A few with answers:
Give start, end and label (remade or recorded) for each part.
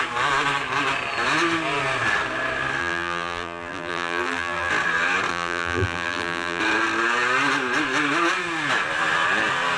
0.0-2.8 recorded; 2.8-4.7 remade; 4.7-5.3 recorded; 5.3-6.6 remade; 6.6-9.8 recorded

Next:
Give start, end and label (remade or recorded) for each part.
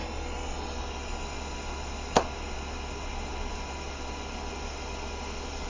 0.0-5.7 recorded